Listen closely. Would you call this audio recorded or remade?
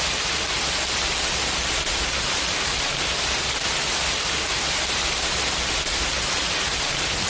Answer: recorded